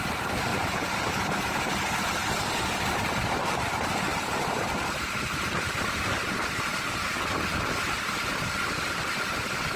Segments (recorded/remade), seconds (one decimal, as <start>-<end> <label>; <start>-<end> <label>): 0.0-0.5 recorded; 0.5-1.1 remade; 1.1-2.2 recorded; 2.2-2.8 remade; 2.8-4.1 recorded; 4.1-6.1 remade; 6.1-6.7 recorded; 6.7-7.2 remade; 7.2-9.8 recorded